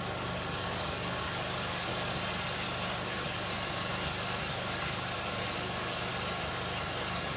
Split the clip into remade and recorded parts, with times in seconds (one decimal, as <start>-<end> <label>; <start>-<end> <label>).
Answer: 0.0-1.9 remade; 1.9-2.9 recorded; 2.9-3.9 remade; 3.9-4.4 recorded; 4.4-6.1 remade; 6.1-7.0 recorded; 7.0-7.4 remade